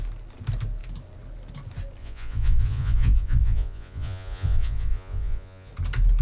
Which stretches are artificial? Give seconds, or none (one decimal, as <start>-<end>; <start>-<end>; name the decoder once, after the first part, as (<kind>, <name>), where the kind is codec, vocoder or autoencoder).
2.0-5.7 (vocoder, Vocos)